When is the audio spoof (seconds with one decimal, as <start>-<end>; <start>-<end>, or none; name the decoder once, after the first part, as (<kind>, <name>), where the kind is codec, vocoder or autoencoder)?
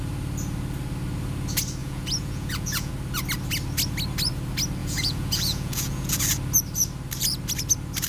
1.8-2.9 (vocoder, Vocos); 4.8-6.2